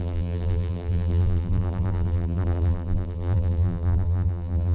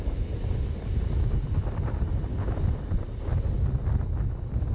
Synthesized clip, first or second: first